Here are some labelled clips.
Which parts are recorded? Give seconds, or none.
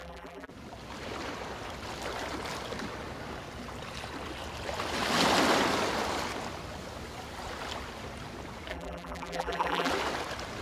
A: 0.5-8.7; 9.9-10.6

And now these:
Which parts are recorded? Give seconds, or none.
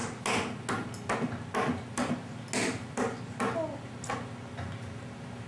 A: 0.0-5.5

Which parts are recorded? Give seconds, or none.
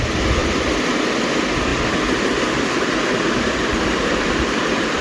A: 0.0-0.4; 0.9-1.7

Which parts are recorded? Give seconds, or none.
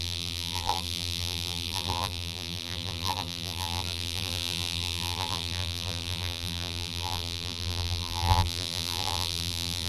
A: none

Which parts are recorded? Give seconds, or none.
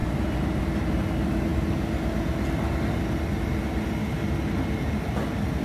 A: 0.0-5.6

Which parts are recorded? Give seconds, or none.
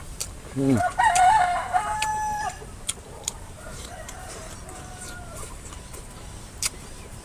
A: 2.1-3.1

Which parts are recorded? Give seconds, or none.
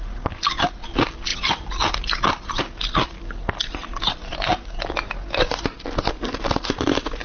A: 0.0-1.3; 2.6-7.2